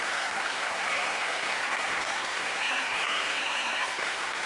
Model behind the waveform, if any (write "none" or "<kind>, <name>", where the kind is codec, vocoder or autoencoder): codec, SNAC